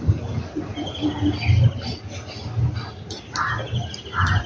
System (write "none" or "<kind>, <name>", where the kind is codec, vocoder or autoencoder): none